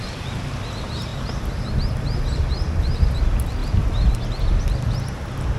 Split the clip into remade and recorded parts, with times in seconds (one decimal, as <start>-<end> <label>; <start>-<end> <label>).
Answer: 0.0-3.6 remade; 3.6-4.6 recorded; 4.6-5.6 remade